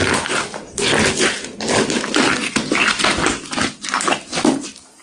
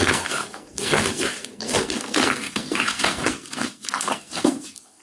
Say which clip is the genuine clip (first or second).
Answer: first